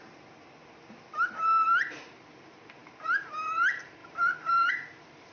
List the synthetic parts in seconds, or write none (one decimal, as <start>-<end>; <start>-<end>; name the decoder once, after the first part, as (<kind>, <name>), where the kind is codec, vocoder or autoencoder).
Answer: 0.0-5.3 (vocoder, BigVGAN v2)